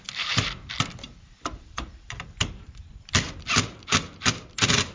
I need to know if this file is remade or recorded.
remade